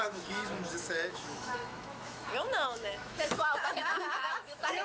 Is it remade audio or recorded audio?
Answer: remade